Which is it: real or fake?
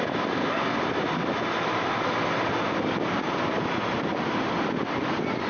real